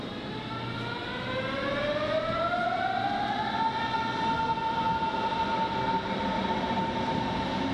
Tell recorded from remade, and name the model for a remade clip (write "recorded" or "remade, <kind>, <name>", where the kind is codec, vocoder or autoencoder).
recorded